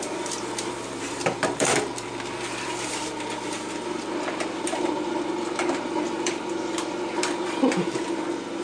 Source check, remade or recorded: remade